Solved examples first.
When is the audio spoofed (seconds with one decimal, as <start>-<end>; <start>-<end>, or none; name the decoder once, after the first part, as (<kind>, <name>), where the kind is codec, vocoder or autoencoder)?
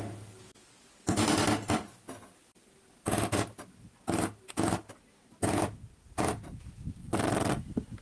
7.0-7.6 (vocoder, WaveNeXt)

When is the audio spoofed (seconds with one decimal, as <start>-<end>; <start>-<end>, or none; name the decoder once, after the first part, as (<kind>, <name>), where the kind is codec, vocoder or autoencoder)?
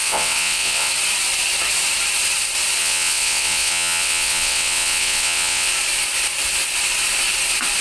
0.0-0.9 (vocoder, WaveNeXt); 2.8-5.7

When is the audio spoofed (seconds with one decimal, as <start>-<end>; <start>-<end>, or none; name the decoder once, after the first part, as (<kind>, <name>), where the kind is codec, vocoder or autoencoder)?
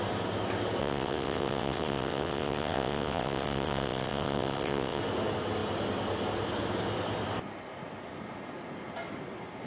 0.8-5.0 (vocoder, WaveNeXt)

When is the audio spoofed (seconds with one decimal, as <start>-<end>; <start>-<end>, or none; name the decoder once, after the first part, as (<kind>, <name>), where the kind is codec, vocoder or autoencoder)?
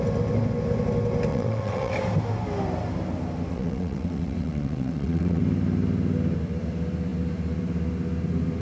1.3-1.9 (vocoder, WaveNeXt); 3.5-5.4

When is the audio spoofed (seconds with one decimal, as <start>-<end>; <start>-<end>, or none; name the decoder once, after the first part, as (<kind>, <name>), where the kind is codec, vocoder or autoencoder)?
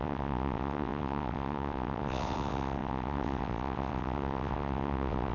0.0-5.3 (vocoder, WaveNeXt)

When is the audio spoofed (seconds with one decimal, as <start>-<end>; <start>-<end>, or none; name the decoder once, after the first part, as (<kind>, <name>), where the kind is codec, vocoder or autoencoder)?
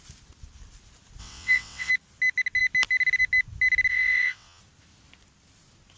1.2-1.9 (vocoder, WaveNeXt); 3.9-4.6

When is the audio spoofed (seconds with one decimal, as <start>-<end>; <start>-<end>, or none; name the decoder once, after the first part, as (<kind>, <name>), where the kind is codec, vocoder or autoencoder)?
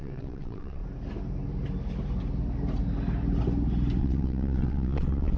0.0-0.8 (vocoder, WaveNeXt); 4.0-5.4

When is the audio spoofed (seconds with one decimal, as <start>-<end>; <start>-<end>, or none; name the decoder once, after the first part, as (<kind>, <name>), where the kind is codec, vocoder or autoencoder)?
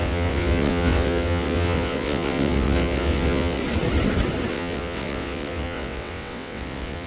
0.0-3.6 (vocoder, WaveNeXt); 4.5-7.1